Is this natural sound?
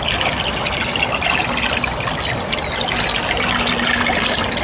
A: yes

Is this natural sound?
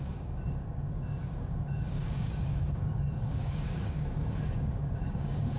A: no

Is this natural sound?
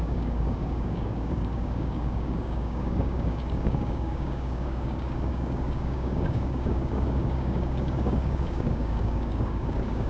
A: no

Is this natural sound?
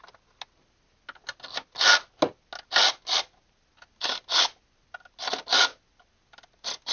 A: yes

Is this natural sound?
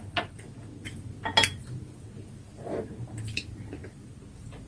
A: yes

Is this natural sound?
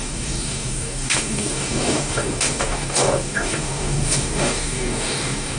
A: no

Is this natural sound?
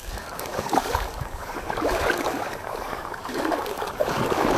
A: no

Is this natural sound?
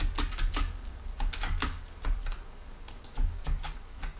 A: no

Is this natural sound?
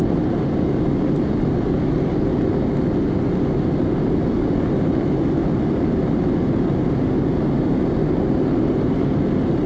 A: yes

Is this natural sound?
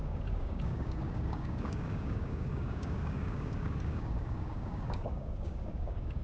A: no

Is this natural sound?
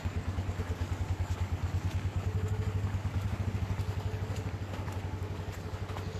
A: no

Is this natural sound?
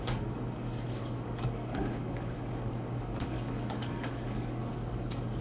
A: no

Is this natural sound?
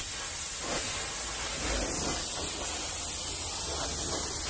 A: yes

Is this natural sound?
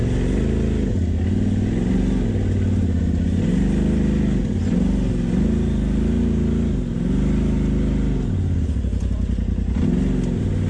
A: yes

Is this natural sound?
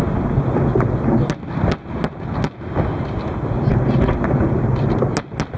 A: yes